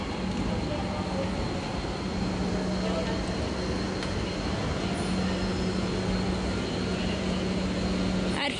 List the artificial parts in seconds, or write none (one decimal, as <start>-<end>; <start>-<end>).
none